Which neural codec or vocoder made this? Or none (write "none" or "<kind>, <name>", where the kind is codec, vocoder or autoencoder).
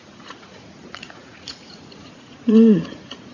vocoder, Vocos